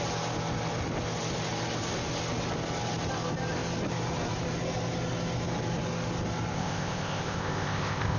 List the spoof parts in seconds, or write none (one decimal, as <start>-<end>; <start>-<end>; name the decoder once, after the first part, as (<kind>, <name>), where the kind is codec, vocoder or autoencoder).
6.5-8.2 (codec, ZipCodec)